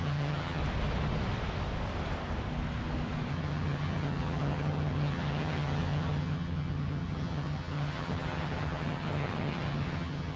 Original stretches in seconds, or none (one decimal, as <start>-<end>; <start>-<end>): 0.6-3.3